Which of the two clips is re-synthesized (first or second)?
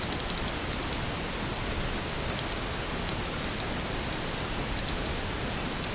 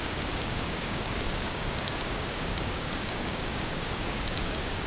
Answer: second